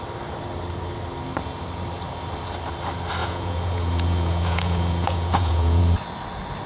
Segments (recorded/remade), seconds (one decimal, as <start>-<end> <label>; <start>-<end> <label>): 0.0-3.2 recorded; 3.2-5.8 remade; 5.8-6.7 recorded